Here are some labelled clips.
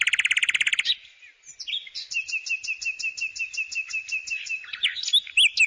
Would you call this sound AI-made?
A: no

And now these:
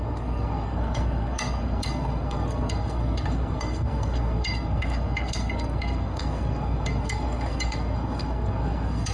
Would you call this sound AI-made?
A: yes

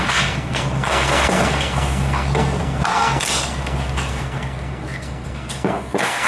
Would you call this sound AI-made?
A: yes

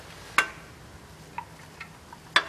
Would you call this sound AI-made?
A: no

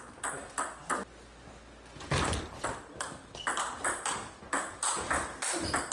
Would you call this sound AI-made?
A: no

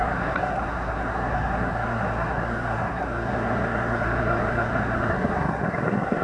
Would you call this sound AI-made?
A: yes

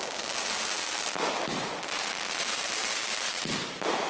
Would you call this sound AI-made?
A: no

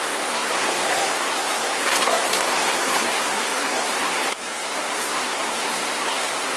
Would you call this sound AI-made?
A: yes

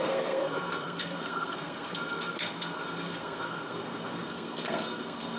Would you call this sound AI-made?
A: yes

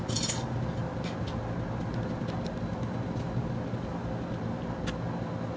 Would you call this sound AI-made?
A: no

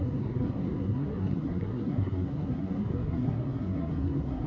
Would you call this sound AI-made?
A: yes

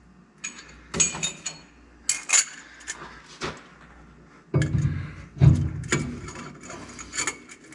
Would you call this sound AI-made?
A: no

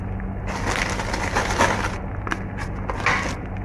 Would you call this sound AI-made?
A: no